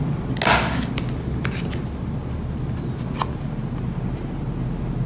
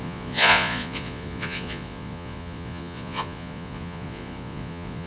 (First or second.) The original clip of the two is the first